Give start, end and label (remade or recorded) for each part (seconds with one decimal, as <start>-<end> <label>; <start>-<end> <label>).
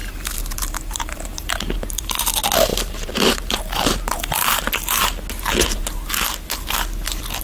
0.0-2.1 remade; 2.1-2.7 recorded; 2.7-4.6 remade; 4.6-7.4 recorded